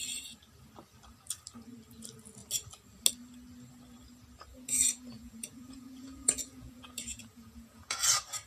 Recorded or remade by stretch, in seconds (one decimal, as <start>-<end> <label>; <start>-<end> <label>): 0.0-4.5 recorded; 4.5-8.0 remade; 8.0-8.5 recorded